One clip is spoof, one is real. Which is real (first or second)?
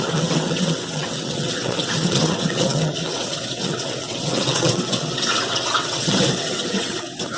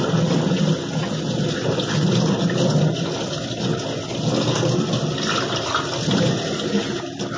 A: second